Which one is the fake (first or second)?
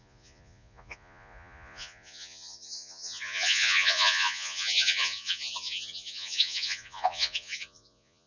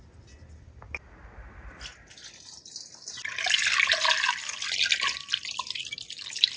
first